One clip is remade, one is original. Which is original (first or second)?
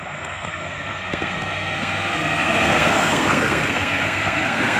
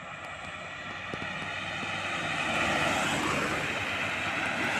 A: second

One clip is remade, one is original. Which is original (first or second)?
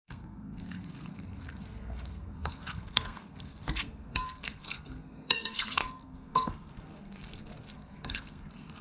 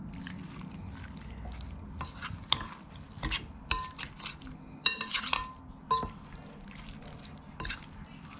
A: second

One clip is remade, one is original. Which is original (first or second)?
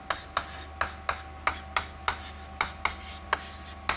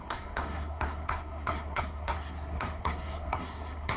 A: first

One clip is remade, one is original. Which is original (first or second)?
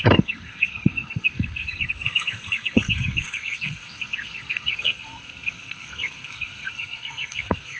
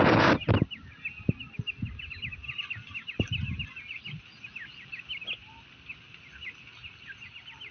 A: second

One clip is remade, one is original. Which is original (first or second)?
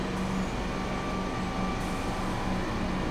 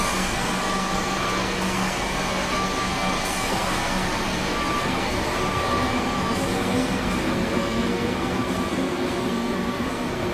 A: first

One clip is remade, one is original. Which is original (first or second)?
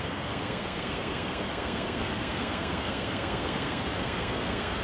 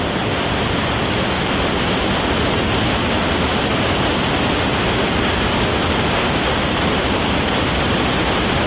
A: second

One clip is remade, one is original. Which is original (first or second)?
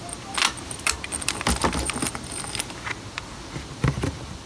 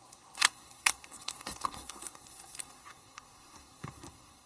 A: first